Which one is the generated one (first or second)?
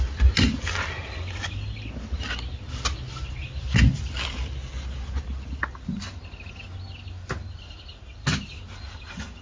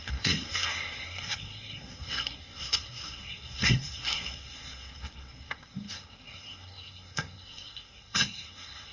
second